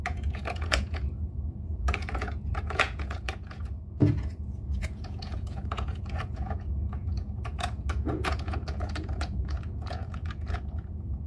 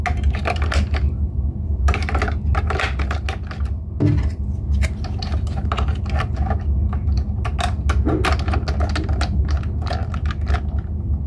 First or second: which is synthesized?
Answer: first